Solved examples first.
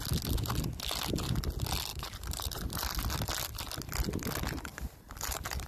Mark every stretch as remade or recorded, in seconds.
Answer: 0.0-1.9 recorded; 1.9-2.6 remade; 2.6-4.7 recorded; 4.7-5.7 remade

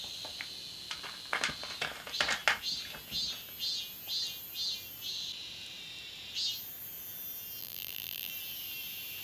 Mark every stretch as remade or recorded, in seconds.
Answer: 0.0-7.6 recorded; 7.6-8.3 remade; 8.3-9.2 recorded

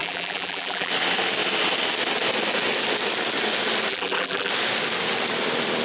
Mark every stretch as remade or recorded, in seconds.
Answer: 0.0-0.9 remade; 0.9-3.9 recorded; 3.9-4.5 remade; 4.5-5.8 recorded

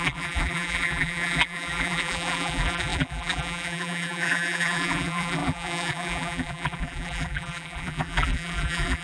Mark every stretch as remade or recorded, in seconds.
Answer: 0.0-9.0 remade

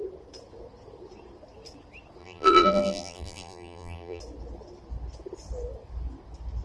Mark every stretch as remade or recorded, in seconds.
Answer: 0.0-2.2 recorded; 2.2-4.2 remade; 4.2-6.6 recorded

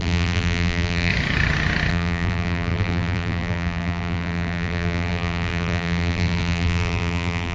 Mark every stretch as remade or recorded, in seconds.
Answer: 0.0-1.1 remade; 1.1-1.9 recorded; 1.9-7.5 remade

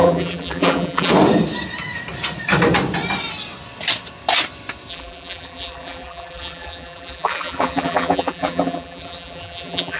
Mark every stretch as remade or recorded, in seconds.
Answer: 0.0-1.1 remade; 1.1-4.9 recorded; 4.9-10.0 remade

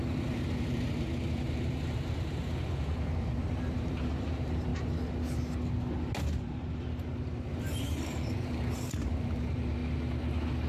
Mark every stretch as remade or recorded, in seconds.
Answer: 0.0-4.7 remade; 4.7-6.4 recorded; 6.4-9.8 remade; 9.8-10.7 recorded